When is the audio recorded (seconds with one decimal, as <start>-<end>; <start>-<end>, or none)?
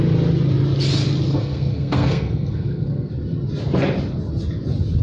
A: 0.0-1.3; 3.1-5.0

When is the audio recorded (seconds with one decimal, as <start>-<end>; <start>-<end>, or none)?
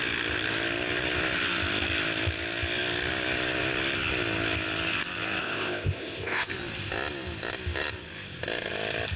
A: 0.0-5.4; 6.5-9.2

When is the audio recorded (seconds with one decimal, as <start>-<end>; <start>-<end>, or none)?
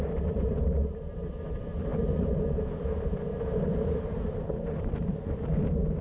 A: none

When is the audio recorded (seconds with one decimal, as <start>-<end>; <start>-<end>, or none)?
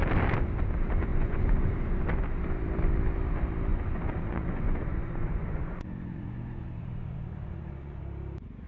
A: 0.0-1.1; 2.0-3.7; 8.0-8.7